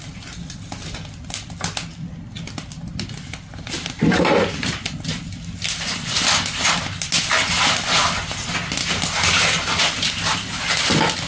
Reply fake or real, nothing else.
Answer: real